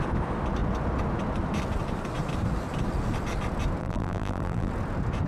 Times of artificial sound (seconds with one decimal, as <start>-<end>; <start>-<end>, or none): 3.8-4.7